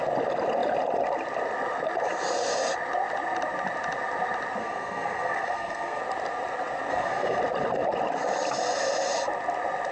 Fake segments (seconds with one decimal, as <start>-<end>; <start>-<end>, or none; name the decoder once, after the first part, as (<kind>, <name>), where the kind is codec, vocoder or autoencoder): 4.6-6.0 (codec, SNAC); 6.9-7.4